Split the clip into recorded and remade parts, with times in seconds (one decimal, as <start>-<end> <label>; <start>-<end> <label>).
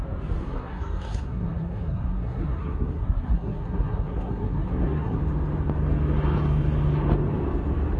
0.0-0.4 recorded; 0.4-5.2 remade; 5.2-8.0 recorded